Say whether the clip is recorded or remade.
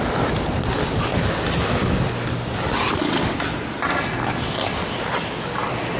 recorded